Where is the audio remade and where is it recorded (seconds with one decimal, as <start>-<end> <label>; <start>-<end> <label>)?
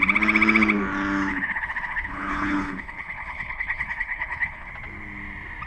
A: 0.0-1.3 recorded; 1.3-4.7 remade; 4.7-5.7 recorded